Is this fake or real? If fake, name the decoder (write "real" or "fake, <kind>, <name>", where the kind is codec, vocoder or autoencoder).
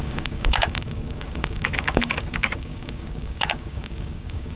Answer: fake, codec, DAC